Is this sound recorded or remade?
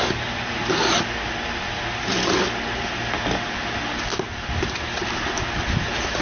recorded